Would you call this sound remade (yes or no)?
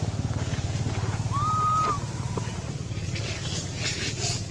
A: no